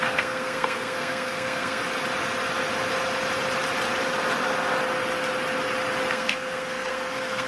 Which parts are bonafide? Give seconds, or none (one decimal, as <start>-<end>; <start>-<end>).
1.8-6.1